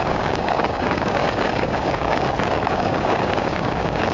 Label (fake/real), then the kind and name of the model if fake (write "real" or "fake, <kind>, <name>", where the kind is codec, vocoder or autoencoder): fake, codec, DAC